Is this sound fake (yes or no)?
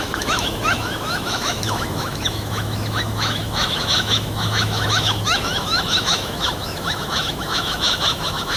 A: yes